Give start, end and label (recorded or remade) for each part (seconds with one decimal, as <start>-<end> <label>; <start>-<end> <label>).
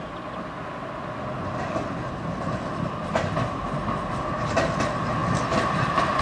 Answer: 0.0-6.2 recorded